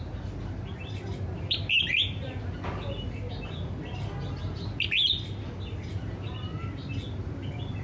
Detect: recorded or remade recorded